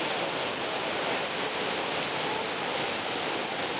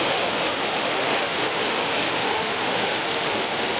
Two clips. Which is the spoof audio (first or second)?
second